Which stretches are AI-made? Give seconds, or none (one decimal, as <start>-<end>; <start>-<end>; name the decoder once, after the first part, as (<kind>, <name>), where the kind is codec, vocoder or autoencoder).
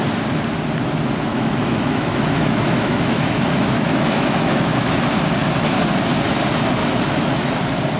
1.3-4.9 (autoencoder, DAC-VAE); 6.8-7.6